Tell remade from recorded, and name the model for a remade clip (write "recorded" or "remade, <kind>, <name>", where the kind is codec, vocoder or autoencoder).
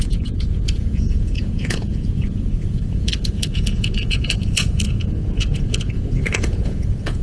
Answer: remade, vocoder, Vocos